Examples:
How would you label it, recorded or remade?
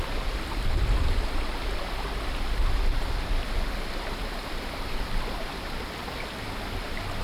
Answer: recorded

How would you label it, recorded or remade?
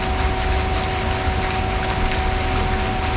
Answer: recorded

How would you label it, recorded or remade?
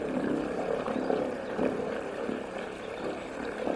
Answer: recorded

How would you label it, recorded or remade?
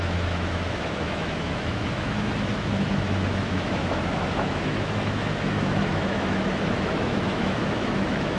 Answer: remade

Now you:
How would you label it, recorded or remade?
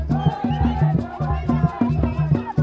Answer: recorded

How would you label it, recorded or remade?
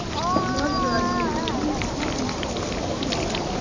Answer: recorded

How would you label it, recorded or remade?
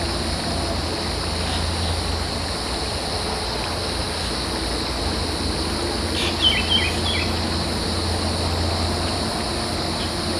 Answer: recorded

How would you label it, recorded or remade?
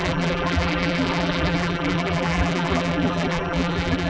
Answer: remade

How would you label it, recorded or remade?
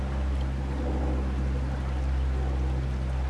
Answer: recorded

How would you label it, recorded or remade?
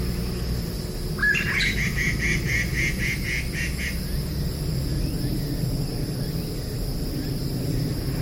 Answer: recorded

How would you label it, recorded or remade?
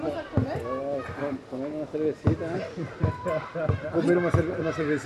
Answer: recorded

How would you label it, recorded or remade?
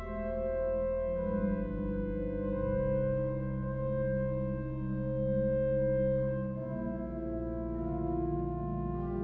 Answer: recorded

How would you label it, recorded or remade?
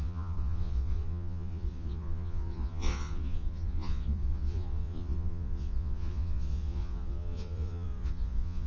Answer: remade